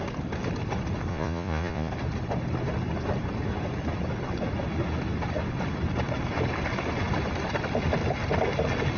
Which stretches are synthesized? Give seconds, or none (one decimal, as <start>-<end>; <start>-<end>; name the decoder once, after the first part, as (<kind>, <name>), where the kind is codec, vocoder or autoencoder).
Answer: 1.1-1.9 (vocoder, Vocos)